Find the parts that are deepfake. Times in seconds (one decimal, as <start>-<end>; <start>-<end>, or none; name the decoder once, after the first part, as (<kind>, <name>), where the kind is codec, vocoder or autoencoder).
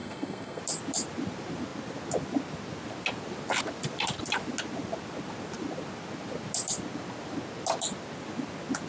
0.0-0.6 (codec, SNAC)